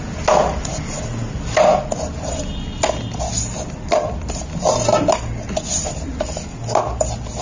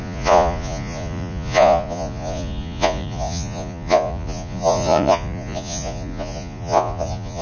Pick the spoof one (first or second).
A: second